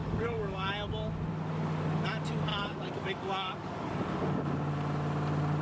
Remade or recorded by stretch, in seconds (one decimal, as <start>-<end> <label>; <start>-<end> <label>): 0.0-0.7 remade; 0.7-2.5 recorded; 2.5-3.9 remade; 3.9-5.6 recorded